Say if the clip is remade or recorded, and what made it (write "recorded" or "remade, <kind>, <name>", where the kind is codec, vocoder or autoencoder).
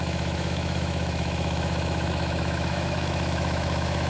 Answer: remade, autoencoder, DAC-VAE